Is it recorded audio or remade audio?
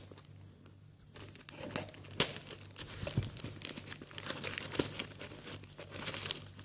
recorded